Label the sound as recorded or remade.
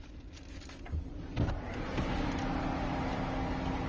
recorded